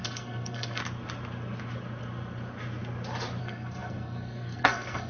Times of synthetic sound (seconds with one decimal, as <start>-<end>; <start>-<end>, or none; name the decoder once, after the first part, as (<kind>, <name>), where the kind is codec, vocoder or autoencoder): 0.0-0.8 (codec, SNAC); 3.4-5.1